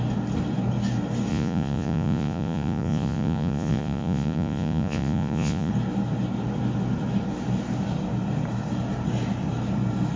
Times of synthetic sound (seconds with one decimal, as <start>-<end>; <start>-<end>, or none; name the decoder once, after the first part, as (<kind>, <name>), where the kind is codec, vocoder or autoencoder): 1.3-5.7 (vocoder, Vocos)